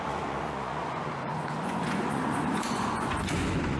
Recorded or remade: remade